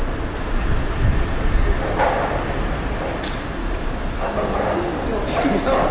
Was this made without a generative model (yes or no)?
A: yes